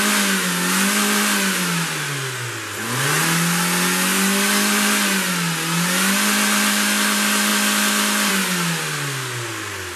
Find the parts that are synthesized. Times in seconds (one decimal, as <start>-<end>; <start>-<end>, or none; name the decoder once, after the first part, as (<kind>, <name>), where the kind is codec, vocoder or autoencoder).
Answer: none